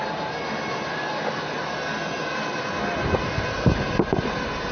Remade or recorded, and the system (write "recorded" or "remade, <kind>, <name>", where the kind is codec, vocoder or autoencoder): recorded